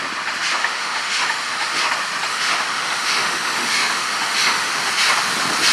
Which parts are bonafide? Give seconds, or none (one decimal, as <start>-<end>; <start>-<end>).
0.0-0.6; 1.8-2.3; 4.9-5.7